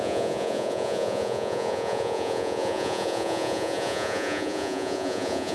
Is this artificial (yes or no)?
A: yes